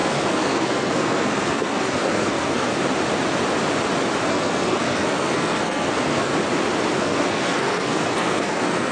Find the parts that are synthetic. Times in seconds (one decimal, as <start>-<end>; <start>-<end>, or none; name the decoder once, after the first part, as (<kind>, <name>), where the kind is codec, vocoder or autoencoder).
0.0-2.7 (codec, SNAC); 4.3-6.3; 7.0-8.9